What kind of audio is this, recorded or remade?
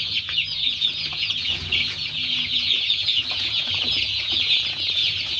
remade